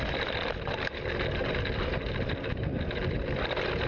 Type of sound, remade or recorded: recorded